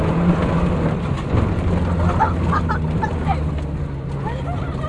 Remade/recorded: recorded